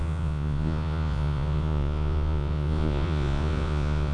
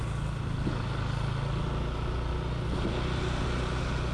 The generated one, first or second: first